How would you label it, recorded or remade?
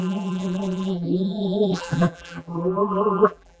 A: remade